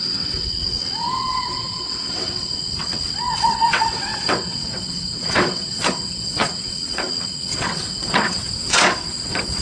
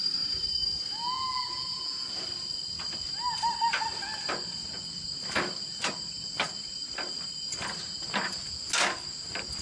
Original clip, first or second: second